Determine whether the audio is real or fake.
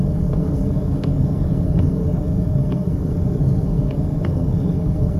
fake